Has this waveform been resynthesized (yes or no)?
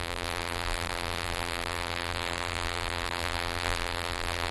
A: yes